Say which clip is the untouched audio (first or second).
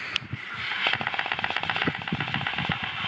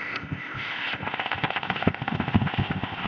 first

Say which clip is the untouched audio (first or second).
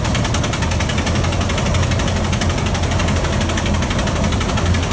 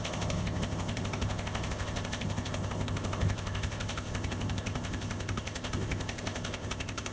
first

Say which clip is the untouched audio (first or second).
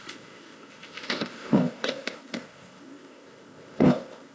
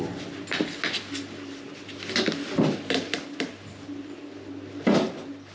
second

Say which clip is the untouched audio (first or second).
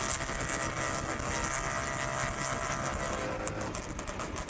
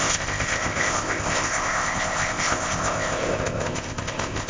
first